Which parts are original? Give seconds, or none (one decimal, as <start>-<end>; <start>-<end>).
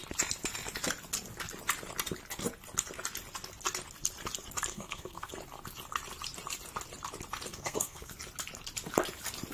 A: 0.0-4.7; 5.3-7.5; 8.1-9.5